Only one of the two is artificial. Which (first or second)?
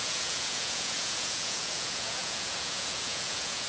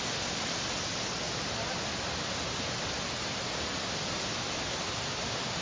first